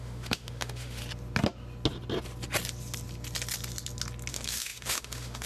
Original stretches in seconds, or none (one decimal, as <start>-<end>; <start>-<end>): 1.0-4.3